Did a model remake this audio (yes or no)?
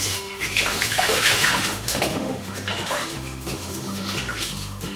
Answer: yes